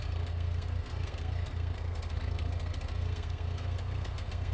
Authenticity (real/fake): fake